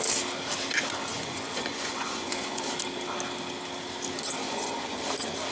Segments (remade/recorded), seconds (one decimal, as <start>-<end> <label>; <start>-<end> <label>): 0.0-1.1 recorded; 1.1-2.7 remade; 2.7-4.4 recorded; 4.4-5.0 remade; 5.0-5.5 recorded